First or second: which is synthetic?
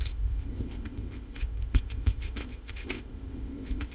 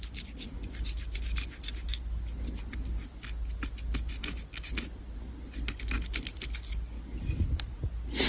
first